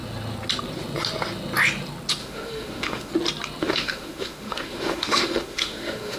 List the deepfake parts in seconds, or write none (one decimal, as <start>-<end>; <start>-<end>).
2.2-3.1; 3.6-6.2